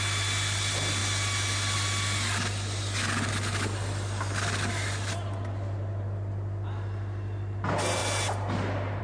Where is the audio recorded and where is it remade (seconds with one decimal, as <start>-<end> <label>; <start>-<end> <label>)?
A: 0.0-9.0 recorded

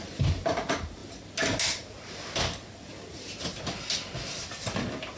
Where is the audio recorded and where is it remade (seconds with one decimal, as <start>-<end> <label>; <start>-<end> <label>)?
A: 0.0-5.2 recorded

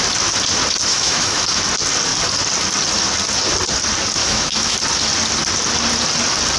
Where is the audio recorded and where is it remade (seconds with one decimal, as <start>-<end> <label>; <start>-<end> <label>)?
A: 0.0-0.9 recorded; 0.9-1.6 remade; 1.6-4.2 recorded; 4.2-4.8 remade; 4.8-6.6 recorded

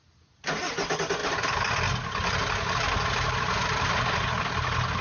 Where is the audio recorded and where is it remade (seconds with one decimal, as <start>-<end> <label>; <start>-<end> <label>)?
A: 0.0-5.0 recorded

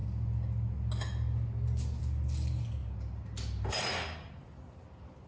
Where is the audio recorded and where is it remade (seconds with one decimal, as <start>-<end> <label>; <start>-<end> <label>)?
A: 0.0-5.3 recorded